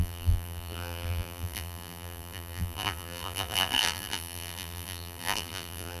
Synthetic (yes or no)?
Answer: yes